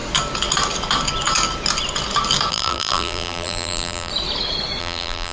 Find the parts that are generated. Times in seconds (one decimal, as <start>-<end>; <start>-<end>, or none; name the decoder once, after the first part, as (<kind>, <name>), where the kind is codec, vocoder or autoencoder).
2.5-4.1 (vocoder, BigVGAN v2); 4.8-5.3